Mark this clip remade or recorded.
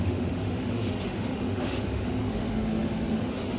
remade